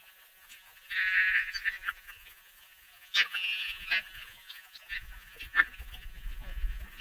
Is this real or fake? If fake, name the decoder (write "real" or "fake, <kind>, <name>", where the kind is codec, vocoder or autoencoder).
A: fake, vocoder, Vocos